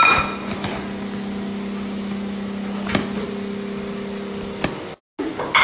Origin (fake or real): real